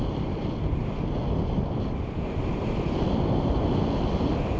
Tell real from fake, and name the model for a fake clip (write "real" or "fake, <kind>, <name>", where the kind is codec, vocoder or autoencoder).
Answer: real